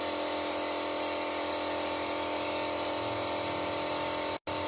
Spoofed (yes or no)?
no